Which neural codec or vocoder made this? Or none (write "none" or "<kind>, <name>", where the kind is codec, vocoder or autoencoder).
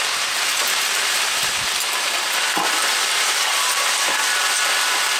vocoder, BigVGAN v2